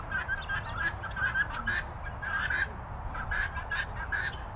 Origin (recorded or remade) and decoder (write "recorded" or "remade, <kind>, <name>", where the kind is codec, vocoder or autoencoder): recorded